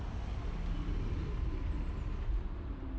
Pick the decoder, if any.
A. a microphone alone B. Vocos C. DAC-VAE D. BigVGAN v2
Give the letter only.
A